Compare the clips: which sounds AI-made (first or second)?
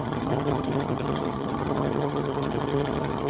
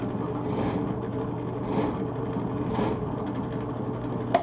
first